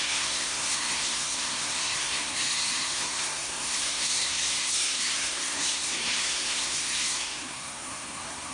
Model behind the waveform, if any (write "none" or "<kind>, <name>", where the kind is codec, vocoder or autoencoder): codec, SNAC